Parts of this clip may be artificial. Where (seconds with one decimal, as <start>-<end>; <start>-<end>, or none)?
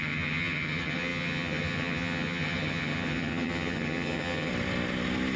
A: 0.0-4.5